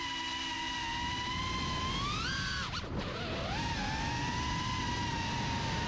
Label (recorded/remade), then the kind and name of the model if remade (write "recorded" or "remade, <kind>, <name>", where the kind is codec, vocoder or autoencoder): recorded